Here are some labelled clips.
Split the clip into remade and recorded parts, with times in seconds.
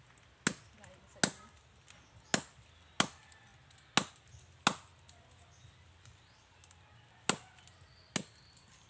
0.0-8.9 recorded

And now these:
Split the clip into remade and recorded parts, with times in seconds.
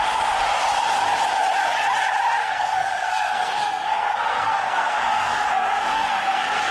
0.0-2.4 recorded; 2.4-6.7 remade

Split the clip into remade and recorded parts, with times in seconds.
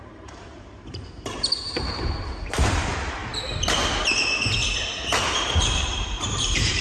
0.0-3.2 remade; 3.2-5.2 recorded; 5.2-6.8 remade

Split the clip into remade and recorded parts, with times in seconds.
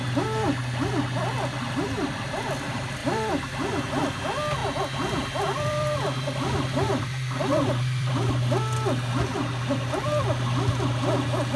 0.0-3.0 recorded; 3.0-3.8 remade; 3.8-4.6 recorded; 4.6-8.3 remade; 8.3-11.6 recorded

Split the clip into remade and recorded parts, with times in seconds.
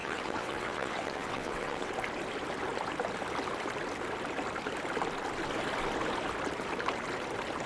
0.0-1.9 remade; 1.9-7.7 recorded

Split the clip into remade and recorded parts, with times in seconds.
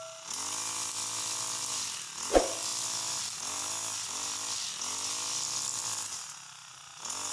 0.0-7.3 recorded